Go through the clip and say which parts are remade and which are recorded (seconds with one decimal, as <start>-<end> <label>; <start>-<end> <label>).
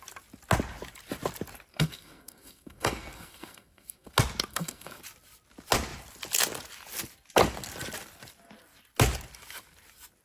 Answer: 0.0-1.7 recorded; 1.7-4.1 remade; 4.1-4.5 recorded; 4.5-5.0 remade; 5.0-10.2 recorded